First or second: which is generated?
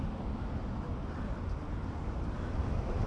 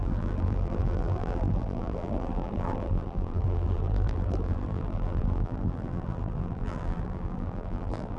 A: second